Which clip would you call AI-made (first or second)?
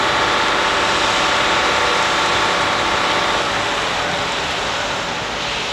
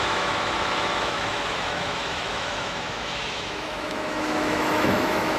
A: second